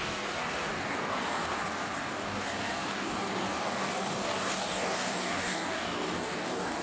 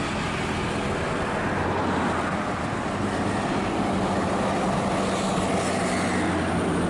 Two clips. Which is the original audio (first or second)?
second